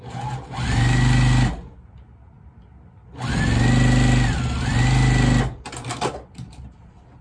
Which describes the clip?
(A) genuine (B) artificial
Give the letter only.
A